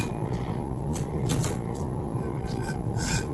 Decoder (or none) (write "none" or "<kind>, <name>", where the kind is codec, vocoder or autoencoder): vocoder, Vocos